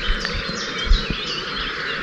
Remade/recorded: remade